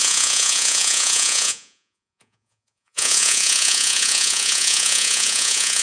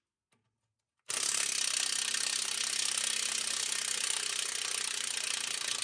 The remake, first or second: first